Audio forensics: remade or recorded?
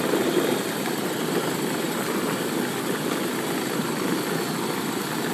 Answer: recorded